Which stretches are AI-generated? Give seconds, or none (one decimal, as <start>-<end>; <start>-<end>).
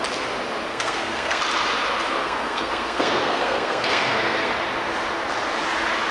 0.7-1.4; 2.2-4.5